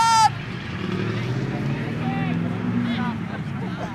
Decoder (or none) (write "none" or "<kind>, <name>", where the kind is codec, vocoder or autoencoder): none